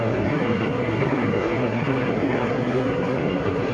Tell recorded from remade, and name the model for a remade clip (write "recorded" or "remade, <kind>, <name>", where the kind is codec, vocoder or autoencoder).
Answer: remade, codec, SNAC